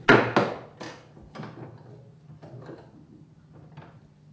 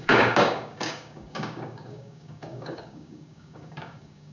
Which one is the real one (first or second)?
first